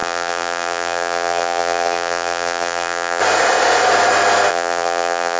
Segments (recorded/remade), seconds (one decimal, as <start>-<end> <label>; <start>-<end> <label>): 0.0-3.2 remade; 3.2-4.5 recorded; 4.5-5.4 remade